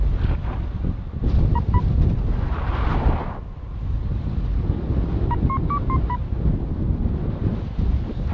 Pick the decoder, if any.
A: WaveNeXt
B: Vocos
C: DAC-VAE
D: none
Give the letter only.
D